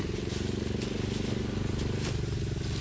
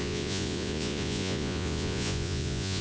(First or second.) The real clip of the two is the first